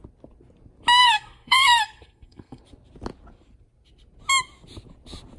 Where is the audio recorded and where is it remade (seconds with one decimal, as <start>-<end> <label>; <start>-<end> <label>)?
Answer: 0.0-1.0 recorded; 1.0-2.6 remade; 2.6-5.4 recorded